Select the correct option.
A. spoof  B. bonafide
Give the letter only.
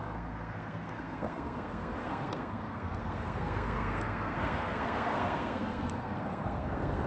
A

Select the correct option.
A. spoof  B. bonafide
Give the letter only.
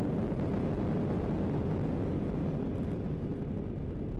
B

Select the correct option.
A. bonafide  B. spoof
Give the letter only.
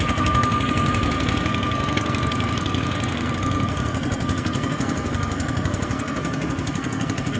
B